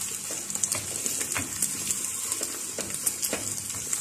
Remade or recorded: recorded